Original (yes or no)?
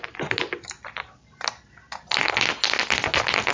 yes